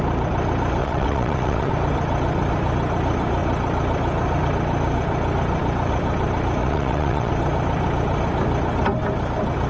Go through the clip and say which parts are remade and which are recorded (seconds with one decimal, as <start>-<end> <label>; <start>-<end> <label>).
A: 0.0-0.8 recorded; 0.8-1.7 remade; 1.7-6.6 recorded; 6.6-7.3 remade; 7.3-9.7 recorded